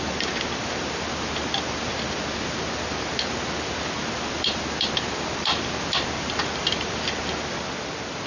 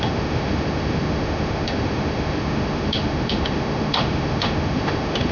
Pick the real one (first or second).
first